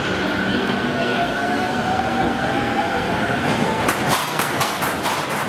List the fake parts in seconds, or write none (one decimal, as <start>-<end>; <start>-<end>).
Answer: 0.5-3.8; 4.2-4.8

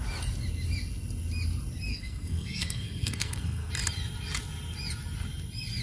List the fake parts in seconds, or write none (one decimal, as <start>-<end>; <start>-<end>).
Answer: 1.9-3.7